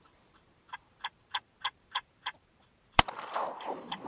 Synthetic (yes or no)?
yes